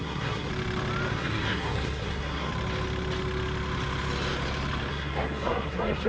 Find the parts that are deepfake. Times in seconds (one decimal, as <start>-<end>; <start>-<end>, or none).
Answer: 0.0-0.5; 1.1-2.5; 4.9-6.1